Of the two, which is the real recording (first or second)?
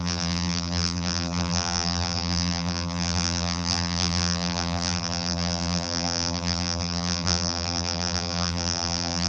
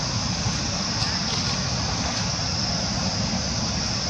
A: second